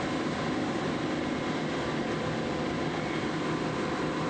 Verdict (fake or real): real